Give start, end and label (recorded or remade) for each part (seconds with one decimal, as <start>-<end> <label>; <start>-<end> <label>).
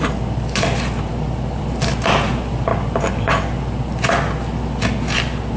0.0-5.6 recorded